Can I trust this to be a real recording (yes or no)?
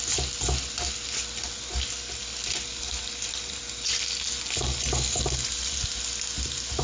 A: yes